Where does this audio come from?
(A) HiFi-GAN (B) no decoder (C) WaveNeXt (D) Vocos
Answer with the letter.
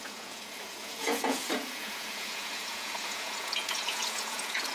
D